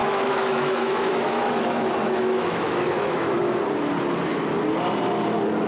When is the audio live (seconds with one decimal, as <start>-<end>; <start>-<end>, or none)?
3.4-5.7